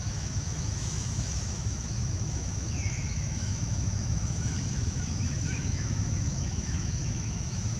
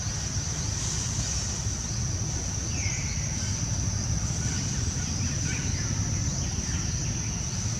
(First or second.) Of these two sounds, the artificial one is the first